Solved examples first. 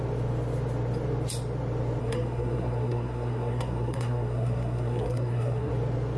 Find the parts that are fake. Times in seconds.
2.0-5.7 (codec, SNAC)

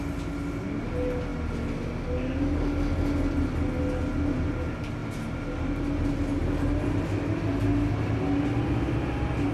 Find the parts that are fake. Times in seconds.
none

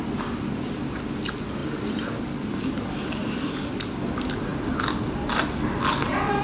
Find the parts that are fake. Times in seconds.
none